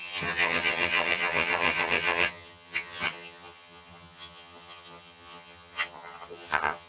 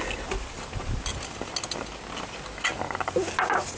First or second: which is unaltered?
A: second